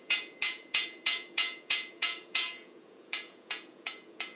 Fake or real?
fake